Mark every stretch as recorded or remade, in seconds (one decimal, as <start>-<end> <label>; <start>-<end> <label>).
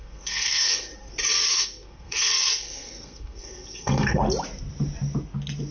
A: 0.0-0.9 remade; 0.9-1.5 recorded; 1.5-4.2 remade; 4.2-5.7 recorded